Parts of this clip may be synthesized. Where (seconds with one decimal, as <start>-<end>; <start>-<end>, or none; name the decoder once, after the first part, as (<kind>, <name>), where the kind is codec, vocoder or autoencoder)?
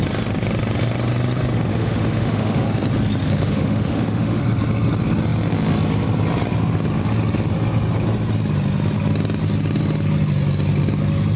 1.7-2.7 (autoencoder, DAC-VAE); 3.2-4.4